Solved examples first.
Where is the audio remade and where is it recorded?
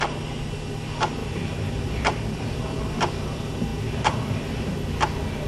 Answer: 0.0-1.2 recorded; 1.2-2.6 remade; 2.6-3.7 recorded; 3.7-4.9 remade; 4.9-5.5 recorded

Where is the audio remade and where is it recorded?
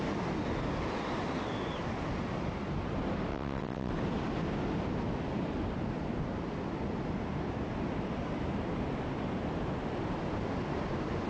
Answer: 0.0-3.3 recorded; 3.3-3.9 remade; 3.9-11.3 recorded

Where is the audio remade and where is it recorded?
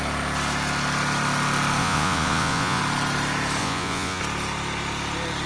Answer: 0.0-1.8 recorded; 1.8-2.8 remade; 2.8-3.6 recorded; 3.6-4.2 remade; 4.2-5.5 recorded